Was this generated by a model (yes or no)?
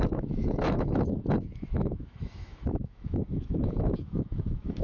yes